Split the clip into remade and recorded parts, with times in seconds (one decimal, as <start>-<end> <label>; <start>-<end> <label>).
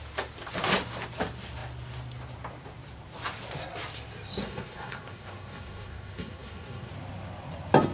0.0-4.4 recorded; 4.4-6.9 remade; 6.9-7.9 recorded